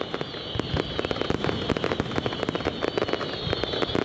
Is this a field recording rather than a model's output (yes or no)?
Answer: yes